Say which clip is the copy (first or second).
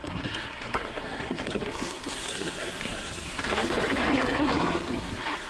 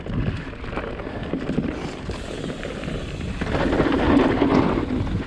first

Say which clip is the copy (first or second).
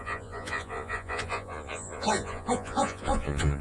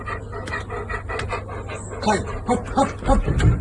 first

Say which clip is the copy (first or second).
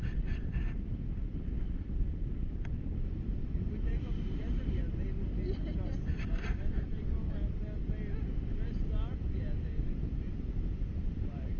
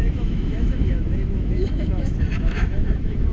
second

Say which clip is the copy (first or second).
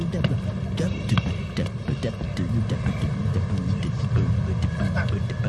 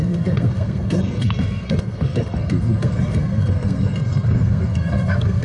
second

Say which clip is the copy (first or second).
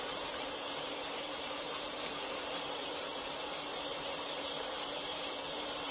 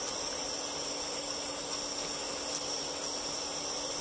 first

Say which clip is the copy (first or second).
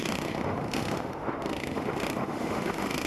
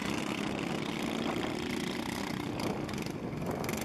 first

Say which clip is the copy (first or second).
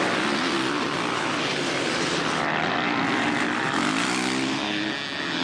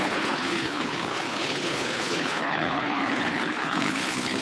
second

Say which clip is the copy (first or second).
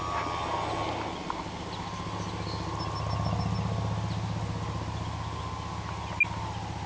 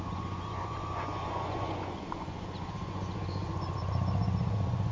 second